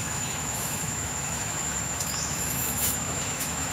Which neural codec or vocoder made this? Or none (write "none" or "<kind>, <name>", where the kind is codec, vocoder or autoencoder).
autoencoder, DAC-VAE